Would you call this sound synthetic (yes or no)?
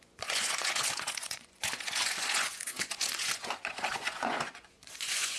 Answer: yes